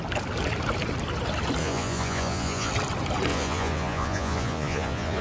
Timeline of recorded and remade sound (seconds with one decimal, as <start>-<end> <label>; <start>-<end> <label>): 0.0-1.6 recorded; 1.6-2.7 remade; 2.7-3.3 recorded; 3.3-5.2 remade